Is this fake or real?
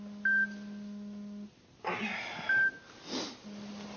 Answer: real